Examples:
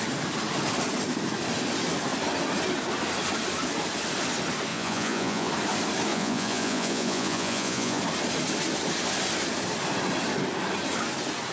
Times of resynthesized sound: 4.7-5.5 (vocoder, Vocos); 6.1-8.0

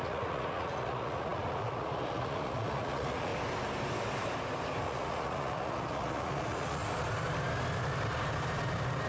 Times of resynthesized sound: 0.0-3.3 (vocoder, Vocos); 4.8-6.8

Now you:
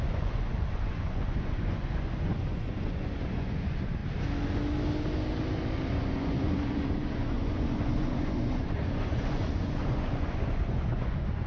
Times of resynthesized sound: 0.0-4.0 (vocoder, Vocos); 5.9-11.5

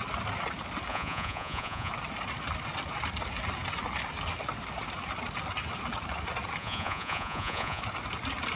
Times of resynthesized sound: 0.9-1.9 (vocoder, Vocos); 6.6-7.8

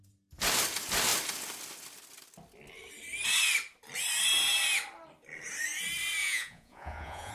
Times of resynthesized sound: 6.2-7.3 (vocoder, Vocos)